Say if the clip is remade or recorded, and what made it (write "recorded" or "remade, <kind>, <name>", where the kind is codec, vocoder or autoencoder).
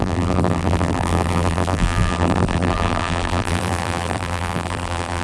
remade, vocoder, BigVGAN v2